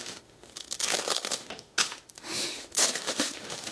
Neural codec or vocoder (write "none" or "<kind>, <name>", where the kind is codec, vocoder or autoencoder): autoencoder, DAC-VAE